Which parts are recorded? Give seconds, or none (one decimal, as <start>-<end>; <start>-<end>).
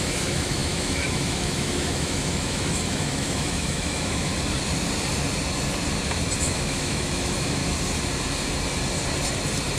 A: 4.3-6.4; 7.6-9.8